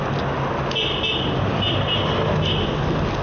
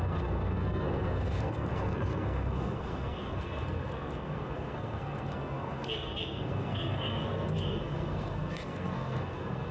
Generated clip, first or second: second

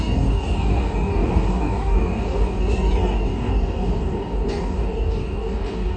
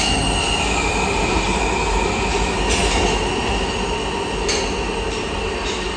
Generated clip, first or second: first